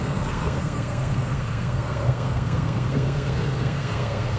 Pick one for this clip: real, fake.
fake